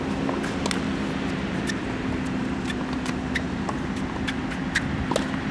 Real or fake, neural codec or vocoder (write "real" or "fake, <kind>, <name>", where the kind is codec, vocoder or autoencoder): real